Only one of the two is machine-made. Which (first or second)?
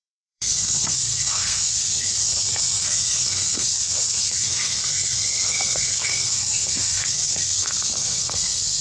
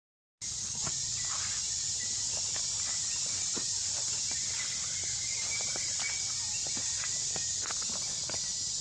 first